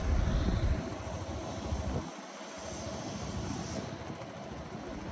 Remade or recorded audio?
recorded